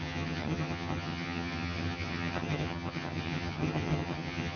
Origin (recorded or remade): remade